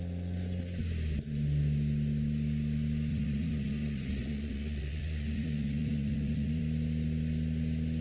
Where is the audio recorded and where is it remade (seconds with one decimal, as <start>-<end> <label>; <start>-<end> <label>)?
0.0-3.1 recorded; 3.1-6.6 remade; 6.6-8.0 recorded